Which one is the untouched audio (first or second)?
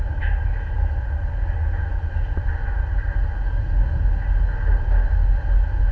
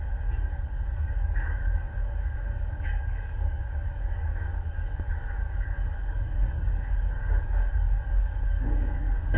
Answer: first